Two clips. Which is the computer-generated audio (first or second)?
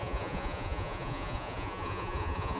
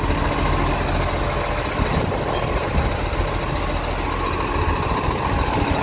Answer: first